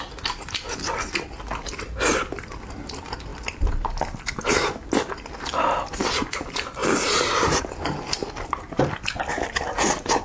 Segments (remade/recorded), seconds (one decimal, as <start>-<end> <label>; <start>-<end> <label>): 0.0-6.8 recorded; 6.8-7.6 remade; 7.6-10.2 recorded